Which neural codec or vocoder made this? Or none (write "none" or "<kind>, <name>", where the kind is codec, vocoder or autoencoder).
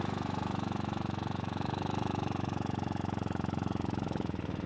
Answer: autoencoder, DAC-VAE